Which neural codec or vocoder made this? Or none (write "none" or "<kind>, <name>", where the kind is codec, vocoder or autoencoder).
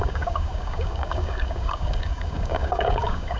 codec, DAC